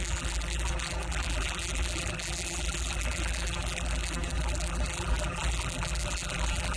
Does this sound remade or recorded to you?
remade